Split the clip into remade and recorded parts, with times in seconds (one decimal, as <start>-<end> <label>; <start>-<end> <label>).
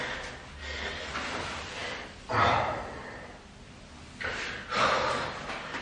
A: 0.0-0.6 recorded; 0.6-1.1 remade; 1.1-5.8 recorded